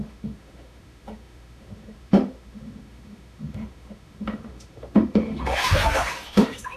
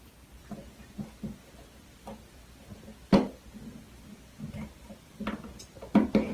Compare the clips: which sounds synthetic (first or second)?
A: first